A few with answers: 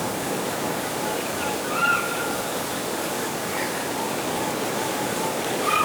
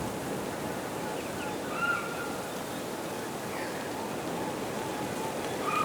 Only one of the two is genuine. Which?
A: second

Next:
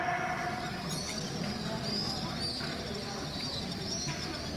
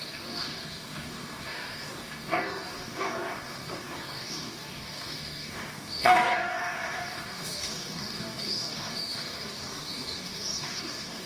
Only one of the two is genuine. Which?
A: first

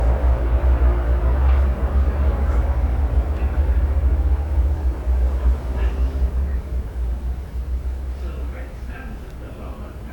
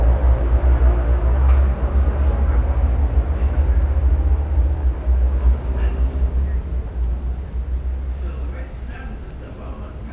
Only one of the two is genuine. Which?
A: second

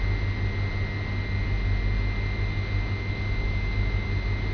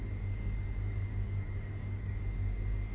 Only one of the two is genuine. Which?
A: first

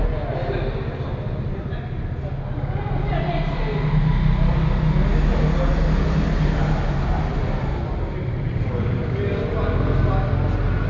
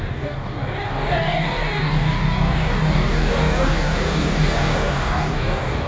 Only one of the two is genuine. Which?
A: first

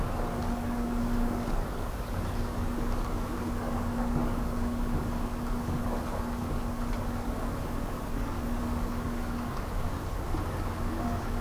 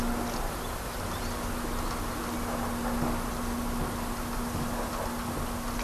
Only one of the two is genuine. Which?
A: second